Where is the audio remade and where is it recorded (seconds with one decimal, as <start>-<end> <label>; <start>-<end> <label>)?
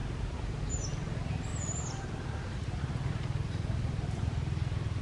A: 0.0-0.7 remade; 0.7-1.5 recorded; 1.5-2.9 remade; 2.9-5.0 recorded